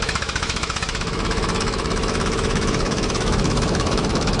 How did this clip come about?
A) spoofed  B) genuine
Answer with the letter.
A